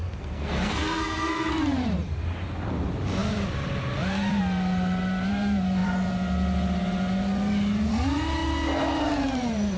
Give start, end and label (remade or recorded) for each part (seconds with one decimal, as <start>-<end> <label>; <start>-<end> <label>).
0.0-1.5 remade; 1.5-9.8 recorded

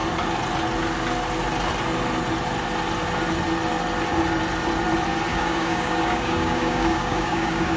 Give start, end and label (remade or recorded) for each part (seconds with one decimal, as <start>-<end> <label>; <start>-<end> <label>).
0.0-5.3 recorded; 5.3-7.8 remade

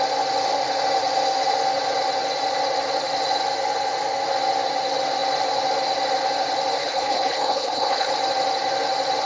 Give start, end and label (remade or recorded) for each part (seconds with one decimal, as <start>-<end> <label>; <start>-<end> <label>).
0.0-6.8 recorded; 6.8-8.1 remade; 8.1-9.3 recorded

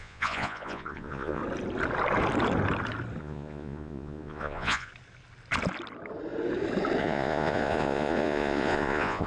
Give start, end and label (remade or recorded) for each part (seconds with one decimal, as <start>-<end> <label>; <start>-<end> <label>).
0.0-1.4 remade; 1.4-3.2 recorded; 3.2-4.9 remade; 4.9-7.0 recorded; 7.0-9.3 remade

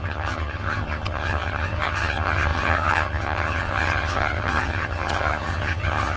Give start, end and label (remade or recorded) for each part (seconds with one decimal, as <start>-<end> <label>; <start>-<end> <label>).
0.0-6.2 remade